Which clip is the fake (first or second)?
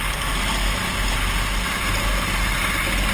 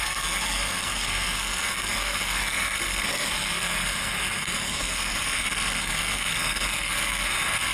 second